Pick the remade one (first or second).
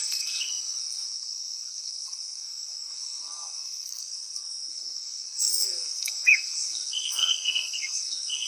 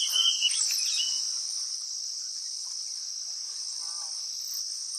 first